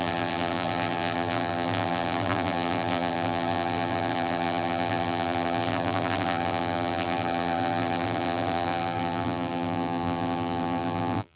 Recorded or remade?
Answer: remade